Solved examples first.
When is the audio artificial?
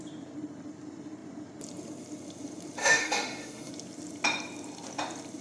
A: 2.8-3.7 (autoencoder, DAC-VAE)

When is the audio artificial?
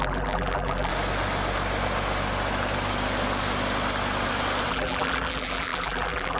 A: 0.0-0.9 (vocoder, BigVGAN v2); 4.7-6.4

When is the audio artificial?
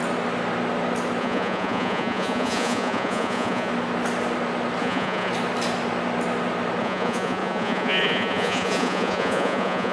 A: 1.2-3.7 (vocoder, Vocos); 4.8-5.3; 6.8-9.9